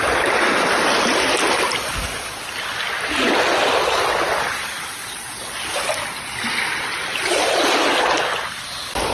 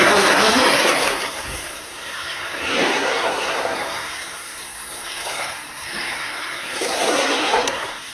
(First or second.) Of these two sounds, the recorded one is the first